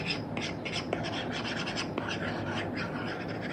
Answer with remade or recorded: recorded